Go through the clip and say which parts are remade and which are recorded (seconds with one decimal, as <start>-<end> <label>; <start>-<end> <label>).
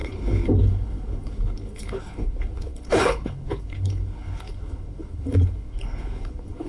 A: 0.0-6.7 remade